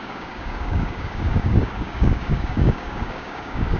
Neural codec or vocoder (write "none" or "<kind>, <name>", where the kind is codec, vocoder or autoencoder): codec, DAC